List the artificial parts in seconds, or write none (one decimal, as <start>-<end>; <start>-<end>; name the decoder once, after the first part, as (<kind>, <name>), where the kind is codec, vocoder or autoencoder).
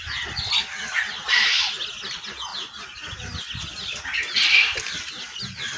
none